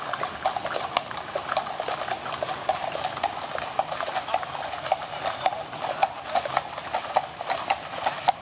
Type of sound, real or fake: real